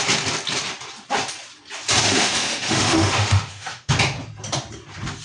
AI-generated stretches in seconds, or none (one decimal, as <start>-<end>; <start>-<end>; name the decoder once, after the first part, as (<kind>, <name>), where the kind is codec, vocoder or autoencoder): 2.0-3.9 (autoencoder, DAC-VAE)